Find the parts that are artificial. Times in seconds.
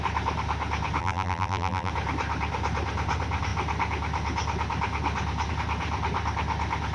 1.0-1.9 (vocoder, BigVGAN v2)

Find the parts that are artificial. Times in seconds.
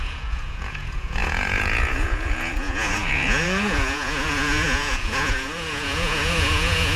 0.0-7.0 (vocoder, Vocos)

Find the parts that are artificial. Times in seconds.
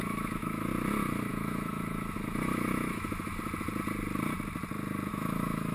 0.0-0.7 (autoencoder, DAC-VAE); 1.3-3.3; 5.1-5.7